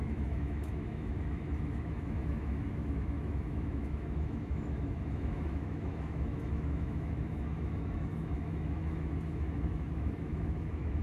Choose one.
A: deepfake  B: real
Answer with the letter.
A